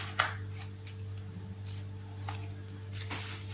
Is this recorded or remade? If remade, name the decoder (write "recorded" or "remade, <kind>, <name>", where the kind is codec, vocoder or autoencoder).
recorded